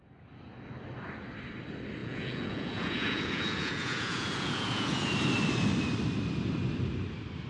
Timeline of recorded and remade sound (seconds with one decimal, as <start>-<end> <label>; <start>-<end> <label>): 0.0-2.0 recorded; 2.0-5.1 remade; 5.1-7.5 recorded